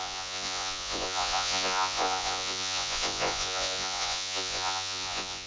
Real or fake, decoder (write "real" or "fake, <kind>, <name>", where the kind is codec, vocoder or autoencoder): fake, vocoder, Vocos